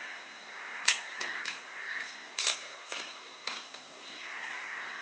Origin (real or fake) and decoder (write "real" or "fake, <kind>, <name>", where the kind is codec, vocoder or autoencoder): fake, codec, SNAC